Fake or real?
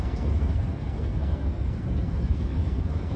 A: fake